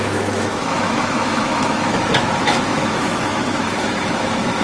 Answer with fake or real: fake